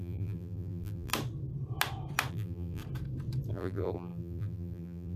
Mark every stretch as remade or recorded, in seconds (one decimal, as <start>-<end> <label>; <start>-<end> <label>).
0.0-1.1 remade; 1.1-2.3 recorded; 2.3-2.8 remade; 2.8-3.5 recorded; 3.5-5.2 remade